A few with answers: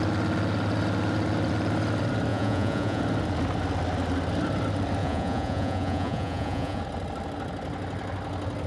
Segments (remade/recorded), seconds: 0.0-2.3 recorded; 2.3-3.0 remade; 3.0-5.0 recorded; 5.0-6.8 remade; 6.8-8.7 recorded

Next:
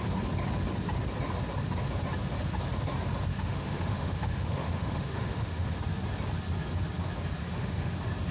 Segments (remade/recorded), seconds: 0.0-3.3 recorded; 3.3-5.8 remade; 5.8-7.4 recorded; 7.4-7.9 remade; 7.9-8.3 recorded

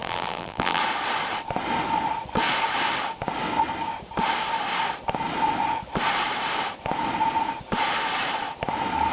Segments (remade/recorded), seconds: 0.0-0.8 remade; 0.8-9.1 recorded

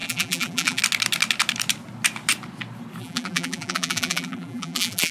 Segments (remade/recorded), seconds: 0.0-0.8 remade; 0.8-3.0 recorded; 3.0-5.1 remade

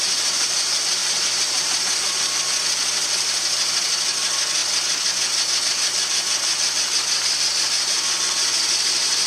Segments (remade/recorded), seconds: 0.0-1.0 recorded; 1.0-2.4 remade; 2.4-9.3 recorded